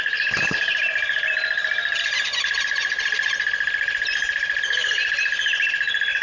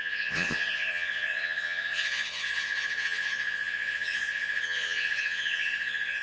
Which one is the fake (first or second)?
second